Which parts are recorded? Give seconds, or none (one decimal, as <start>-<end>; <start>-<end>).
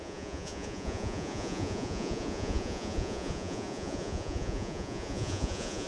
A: none